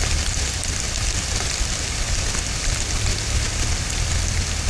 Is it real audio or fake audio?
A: real